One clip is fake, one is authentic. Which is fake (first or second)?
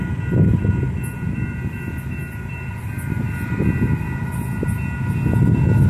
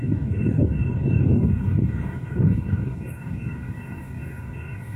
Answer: second